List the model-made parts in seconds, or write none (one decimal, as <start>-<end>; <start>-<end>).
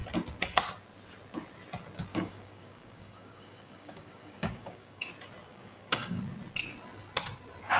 2.1-5.1; 5.5-6.2